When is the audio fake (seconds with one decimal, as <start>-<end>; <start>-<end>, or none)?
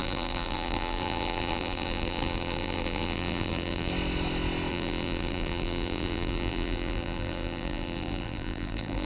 0.0-3.9; 4.7-9.1